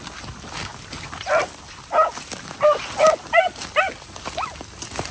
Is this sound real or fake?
real